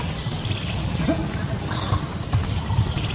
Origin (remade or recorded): recorded